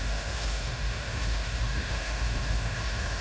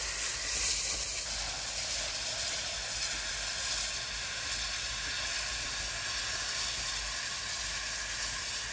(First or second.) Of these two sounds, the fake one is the first